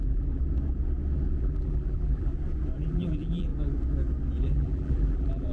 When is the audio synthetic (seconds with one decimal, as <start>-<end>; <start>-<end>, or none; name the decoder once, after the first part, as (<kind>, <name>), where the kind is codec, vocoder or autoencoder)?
0.0-0.4 (vocoder, BigVGAN v2); 1.4-2.3; 2.8-3.5; 4.4-5.5